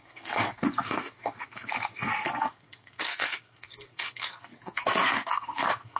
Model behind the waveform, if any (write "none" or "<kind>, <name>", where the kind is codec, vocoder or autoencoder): codec, SNAC